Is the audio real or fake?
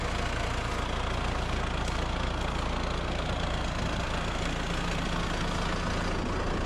real